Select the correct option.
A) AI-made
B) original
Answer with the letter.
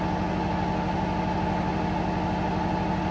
B